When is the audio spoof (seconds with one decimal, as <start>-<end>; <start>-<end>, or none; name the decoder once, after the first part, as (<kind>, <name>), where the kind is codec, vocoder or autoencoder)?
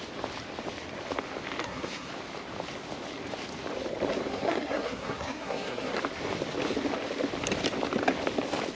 1.6-2.1 (codec, SNAC); 4.3-6.0